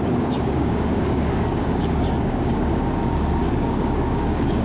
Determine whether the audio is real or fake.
fake